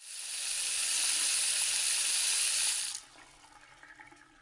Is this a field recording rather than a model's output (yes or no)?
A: yes